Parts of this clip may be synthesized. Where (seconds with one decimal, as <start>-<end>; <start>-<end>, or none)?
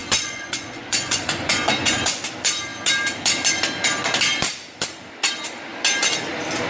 0.0-2.2